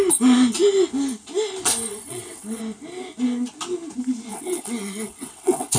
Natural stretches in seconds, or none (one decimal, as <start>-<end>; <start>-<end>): 0.0-1.9; 2.6-4.3